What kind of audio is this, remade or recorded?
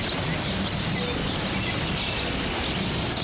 recorded